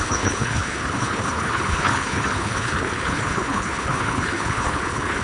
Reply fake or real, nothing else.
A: fake